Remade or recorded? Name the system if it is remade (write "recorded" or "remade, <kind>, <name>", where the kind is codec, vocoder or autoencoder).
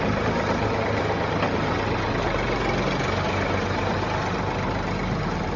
recorded